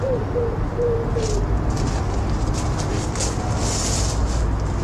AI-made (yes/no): no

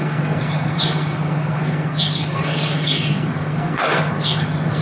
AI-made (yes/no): yes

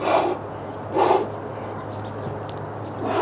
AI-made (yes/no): no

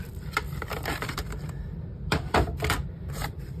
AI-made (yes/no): yes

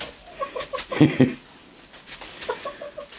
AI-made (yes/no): no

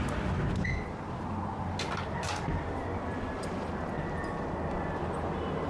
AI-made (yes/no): no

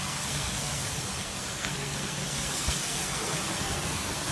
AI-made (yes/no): yes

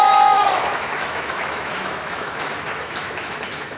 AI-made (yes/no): yes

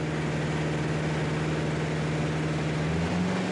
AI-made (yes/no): no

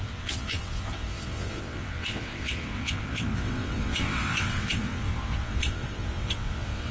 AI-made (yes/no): yes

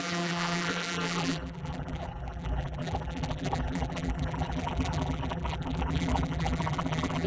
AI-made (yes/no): yes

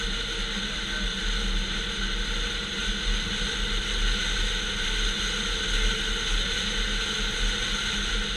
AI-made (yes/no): no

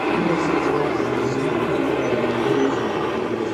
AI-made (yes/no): no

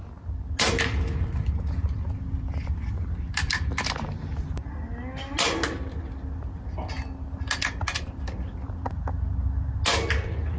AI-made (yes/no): no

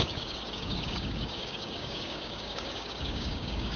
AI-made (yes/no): yes